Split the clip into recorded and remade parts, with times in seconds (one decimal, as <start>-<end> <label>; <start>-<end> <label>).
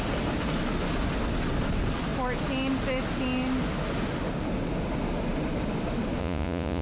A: 0.0-6.2 recorded; 6.2-6.8 remade